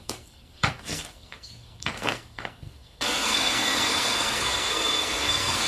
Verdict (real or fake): fake